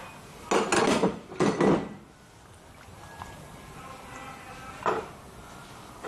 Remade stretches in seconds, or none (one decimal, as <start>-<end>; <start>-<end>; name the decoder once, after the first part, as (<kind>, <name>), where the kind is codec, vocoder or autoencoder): none